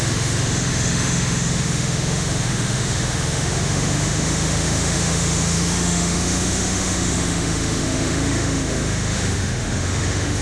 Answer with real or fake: fake